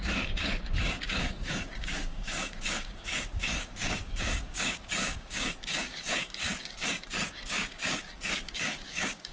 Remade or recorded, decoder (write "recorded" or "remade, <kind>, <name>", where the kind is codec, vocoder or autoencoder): remade, codec, DAC